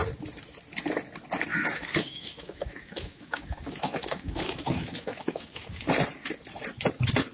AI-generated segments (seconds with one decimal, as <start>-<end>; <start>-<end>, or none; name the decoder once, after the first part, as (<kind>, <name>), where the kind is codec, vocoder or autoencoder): 1.5-5.9 (autoencoder, DAC-VAE)